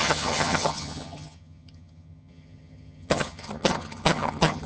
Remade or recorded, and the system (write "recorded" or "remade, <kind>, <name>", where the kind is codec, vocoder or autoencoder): remade, vocoder, HiFi-GAN